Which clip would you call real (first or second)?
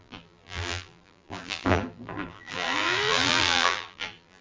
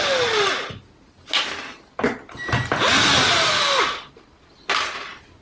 second